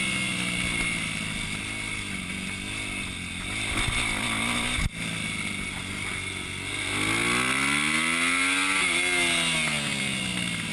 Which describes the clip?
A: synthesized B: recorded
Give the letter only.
B